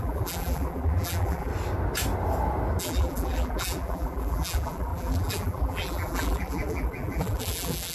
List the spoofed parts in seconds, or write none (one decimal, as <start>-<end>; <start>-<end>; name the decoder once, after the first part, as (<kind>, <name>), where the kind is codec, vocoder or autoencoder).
0.0-1.5 (vocoder, BigVGAN v2); 2.8-7.9